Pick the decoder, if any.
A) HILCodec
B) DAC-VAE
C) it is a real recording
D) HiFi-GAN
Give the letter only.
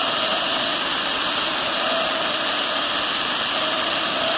C